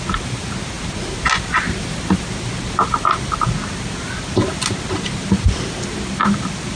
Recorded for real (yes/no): yes